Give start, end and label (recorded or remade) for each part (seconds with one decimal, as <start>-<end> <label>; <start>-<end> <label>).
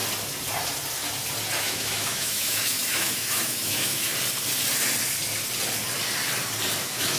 0.0-1.6 recorded; 1.6-4.1 remade; 4.1-6.8 recorded; 6.8-7.2 remade